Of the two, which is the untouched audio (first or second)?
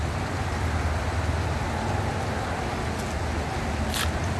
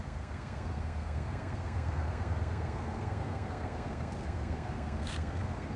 first